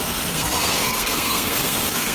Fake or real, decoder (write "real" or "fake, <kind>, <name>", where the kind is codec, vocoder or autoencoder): fake, codec, SNAC